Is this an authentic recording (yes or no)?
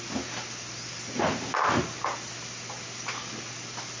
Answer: yes